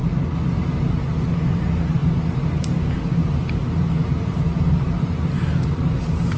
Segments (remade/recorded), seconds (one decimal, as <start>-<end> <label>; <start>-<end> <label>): 0.0-6.4 recorded